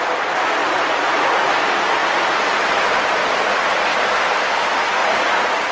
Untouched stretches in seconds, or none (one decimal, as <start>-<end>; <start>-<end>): 0.0-0.6; 1.5-5.0